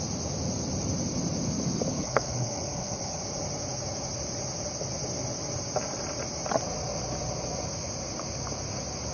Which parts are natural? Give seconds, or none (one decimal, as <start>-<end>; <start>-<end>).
0.0-1.9; 3.2-9.1